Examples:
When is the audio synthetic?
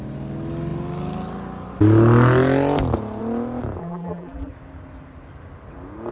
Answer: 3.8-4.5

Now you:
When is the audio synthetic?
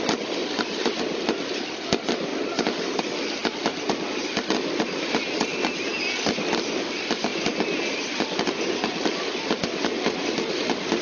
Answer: 0.4-1.0; 7.3-11.0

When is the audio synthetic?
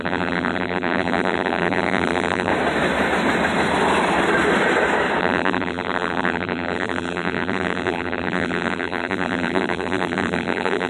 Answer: 0.0-2.5; 5.2-10.9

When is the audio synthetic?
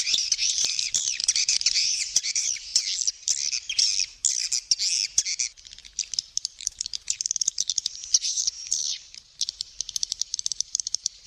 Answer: 0.0-2.7; 6.4-11.3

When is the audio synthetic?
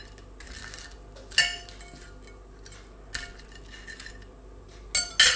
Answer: none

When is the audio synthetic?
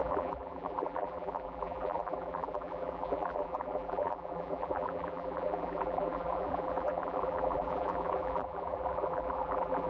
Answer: 0.0-9.9